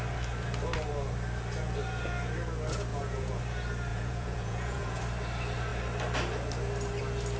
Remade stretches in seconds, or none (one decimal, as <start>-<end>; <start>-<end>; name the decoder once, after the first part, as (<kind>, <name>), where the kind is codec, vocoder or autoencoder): 2.9-3.4 (vocoder, Vocos); 3.9-5.0